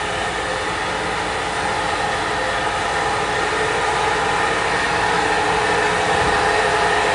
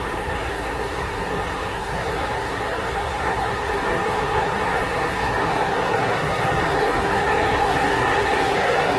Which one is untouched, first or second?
first